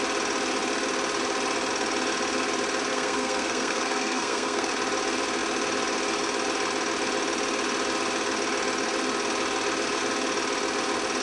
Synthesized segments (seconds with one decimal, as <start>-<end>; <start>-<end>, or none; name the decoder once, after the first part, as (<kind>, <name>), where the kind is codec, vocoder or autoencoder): 2.9-4.7 (codec, SNAC)

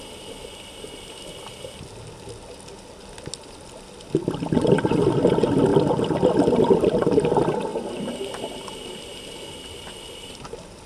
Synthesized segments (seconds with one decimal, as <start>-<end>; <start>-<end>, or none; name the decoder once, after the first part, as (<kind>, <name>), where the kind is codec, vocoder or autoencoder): none

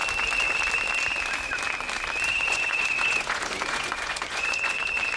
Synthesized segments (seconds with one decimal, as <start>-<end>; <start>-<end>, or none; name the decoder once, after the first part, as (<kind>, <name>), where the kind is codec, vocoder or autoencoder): 2.3-4.8 (vocoder, Vocos)